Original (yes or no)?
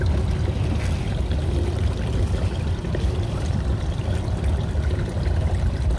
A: no